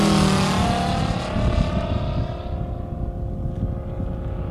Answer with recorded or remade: recorded